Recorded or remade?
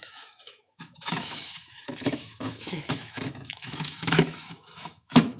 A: remade